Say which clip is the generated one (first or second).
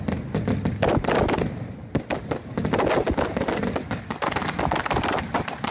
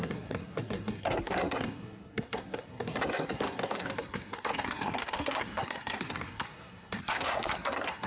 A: second